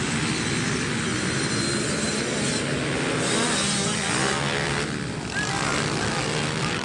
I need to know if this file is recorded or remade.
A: recorded